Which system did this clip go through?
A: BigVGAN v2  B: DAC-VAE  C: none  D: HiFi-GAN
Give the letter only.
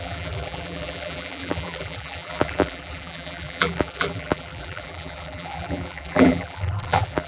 A